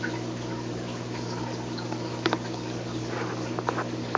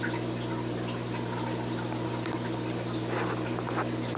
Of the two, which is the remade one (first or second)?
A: first